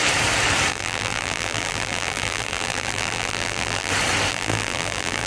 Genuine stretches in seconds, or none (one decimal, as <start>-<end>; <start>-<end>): 0.0-0.7; 3.9-4.3